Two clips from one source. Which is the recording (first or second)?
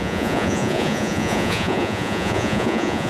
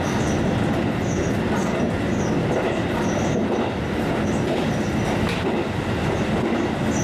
second